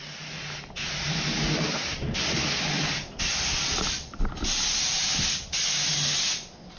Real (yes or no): yes